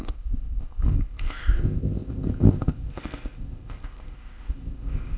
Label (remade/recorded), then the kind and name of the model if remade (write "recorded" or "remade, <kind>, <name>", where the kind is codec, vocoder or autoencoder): remade, codec, ZipCodec